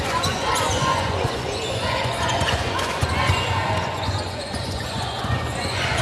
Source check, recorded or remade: remade